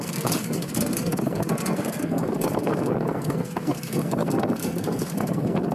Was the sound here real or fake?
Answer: fake